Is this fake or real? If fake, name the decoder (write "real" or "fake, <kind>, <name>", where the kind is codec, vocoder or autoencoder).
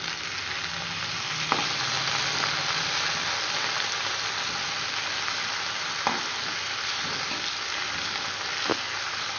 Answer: real